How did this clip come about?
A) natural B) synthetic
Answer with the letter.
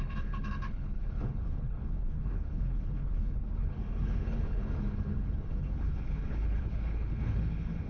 B